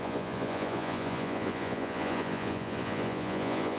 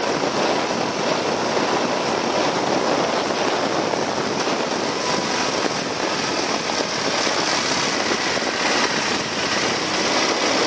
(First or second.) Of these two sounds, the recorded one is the second